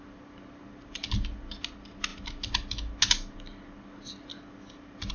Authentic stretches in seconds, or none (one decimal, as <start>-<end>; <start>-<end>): 0.0-5.1